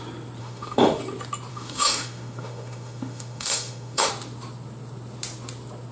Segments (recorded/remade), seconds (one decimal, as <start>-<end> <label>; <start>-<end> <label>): 0.0-0.4 recorded; 0.4-1.0 remade; 1.0-1.5 recorded; 1.5-4.1 remade; 4.1-5.9 recorded